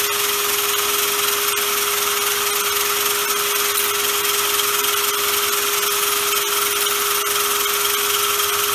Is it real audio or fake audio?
real